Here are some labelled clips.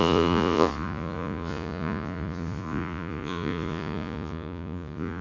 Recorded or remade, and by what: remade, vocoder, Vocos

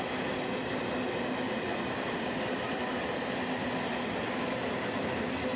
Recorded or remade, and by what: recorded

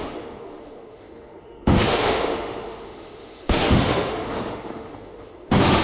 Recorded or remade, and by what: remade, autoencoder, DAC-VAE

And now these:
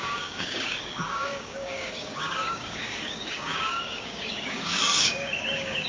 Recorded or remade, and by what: remade, codec, DAC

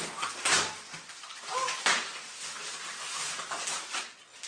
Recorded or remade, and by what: recorded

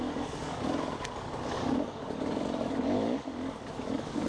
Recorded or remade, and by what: remade, codec, DAC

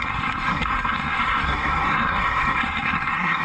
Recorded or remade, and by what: remade, codec, SNAC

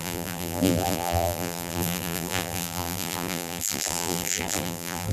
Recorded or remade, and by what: remade, vocoder, BigVGAN v2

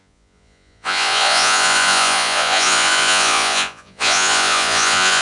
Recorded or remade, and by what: remade, vocoder, Vocos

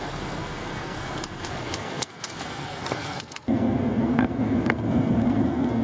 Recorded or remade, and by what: remade, codec, SNAC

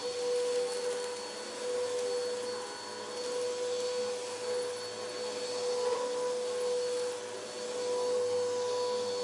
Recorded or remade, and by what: recorded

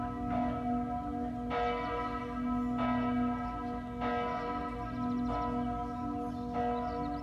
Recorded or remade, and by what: recorded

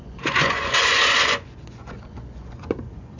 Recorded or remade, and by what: remade, vocoder, Vocos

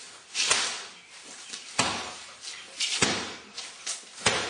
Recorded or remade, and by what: recorded